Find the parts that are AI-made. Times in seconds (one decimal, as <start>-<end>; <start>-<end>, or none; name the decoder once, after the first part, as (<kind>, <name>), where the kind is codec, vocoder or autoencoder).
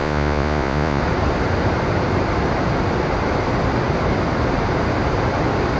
0.0-1.0 (vocoder, Vocos)